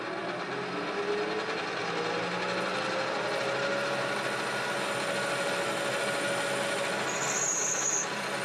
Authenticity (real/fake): real